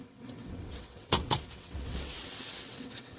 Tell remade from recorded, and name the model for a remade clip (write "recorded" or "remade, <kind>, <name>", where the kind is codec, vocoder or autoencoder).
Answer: remade, vocoder, WaveNeXt